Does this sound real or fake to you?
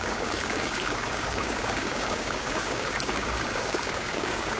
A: fake